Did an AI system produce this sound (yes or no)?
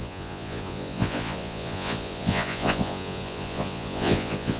yes